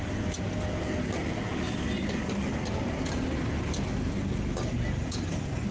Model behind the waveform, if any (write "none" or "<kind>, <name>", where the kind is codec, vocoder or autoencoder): none